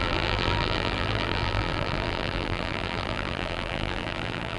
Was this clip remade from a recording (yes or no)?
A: yes